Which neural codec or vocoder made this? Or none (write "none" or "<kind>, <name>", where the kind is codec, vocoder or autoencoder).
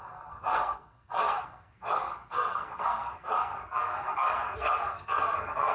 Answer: codec, SNAC